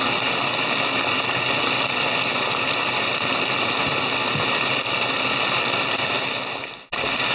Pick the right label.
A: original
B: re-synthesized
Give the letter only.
A